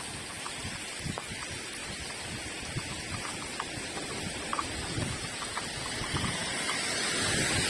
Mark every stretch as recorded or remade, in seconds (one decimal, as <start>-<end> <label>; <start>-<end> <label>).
0.0-4.5 recorded; 4.5-5.1 remade; 5.1-6.4 recorded; 6.4-7.1 remade; 7.1-7.7 recorded